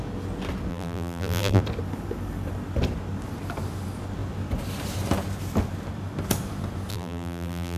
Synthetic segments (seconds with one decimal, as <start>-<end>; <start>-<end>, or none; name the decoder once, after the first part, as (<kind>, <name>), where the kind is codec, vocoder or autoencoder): 0.7-1.6 (vocoder, BigVGAN v2); 6.9-7.8